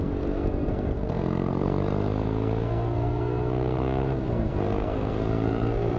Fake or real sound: fake